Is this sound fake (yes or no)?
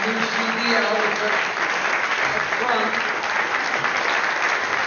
no